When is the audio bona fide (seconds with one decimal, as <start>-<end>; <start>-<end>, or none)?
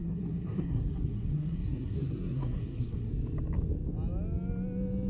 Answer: 3.1-5.1